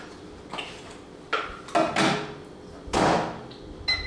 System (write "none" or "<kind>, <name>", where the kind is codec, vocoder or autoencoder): none